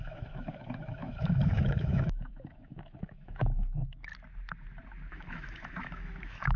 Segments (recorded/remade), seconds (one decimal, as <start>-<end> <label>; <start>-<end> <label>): 0.0-4.1 remade; 4.1-5.1 recorded; 5.1-6.6 remade